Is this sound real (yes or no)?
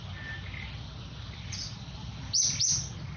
yes